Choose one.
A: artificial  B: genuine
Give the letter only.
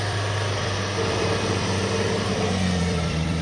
A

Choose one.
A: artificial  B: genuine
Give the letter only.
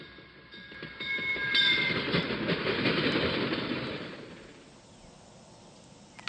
B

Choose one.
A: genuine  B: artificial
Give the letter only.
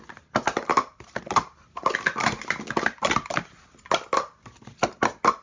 A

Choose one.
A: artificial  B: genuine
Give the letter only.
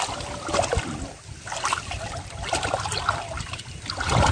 B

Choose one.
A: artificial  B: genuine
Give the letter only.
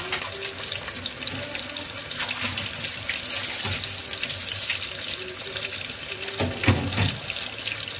B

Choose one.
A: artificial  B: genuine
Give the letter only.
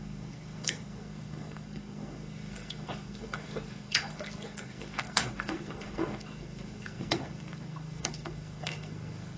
A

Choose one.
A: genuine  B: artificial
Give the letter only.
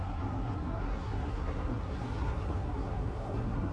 B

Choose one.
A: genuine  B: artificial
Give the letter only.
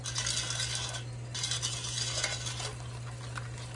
A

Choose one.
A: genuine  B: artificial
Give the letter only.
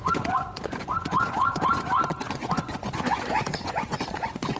B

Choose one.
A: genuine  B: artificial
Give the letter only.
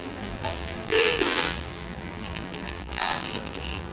B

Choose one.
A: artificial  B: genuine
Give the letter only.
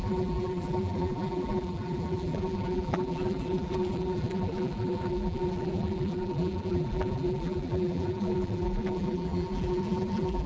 A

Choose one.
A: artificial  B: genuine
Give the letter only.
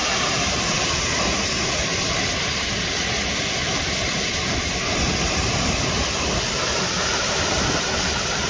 B